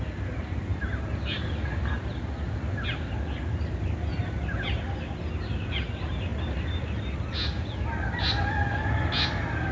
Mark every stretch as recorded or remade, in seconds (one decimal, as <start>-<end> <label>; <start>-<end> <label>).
0.0-0.7 recorded; 0.7-3.1 remade; 3.1-9.7 recorded